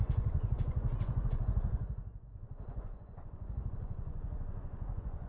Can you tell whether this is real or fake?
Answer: fake